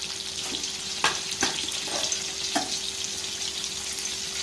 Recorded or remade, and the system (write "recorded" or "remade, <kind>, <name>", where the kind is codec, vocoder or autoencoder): recorded